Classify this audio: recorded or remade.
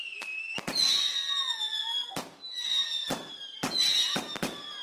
recorded